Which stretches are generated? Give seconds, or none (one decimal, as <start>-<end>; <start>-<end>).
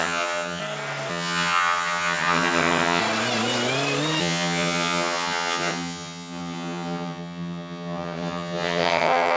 0.0-0.6; 1.1-3.0; 4.2-9.4